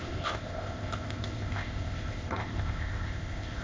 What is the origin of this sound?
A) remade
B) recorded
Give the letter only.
A